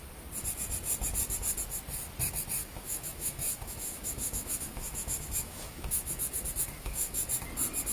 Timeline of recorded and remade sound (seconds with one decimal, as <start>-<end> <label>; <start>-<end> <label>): 0.0-2.6 recorded; 2.6-7.3 remade; 7.3-7.9 recorded